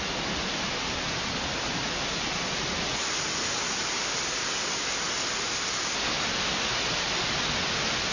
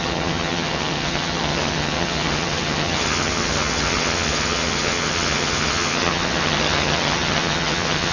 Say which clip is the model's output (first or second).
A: second